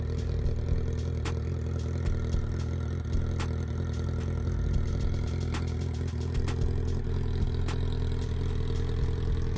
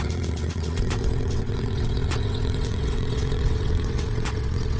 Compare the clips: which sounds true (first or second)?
first